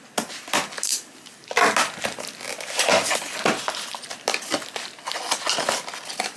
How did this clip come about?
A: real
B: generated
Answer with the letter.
A